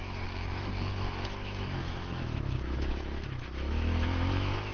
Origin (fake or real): fake